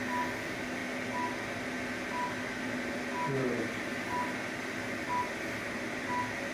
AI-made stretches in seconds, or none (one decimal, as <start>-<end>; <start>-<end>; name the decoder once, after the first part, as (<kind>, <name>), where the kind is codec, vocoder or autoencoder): none